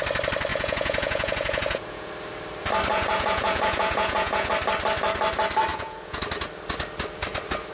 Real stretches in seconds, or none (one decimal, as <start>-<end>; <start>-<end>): 0.0-0.5; 2.1-2.9; 4.5-5.7; 6.2-7.7